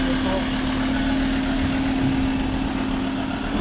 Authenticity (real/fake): real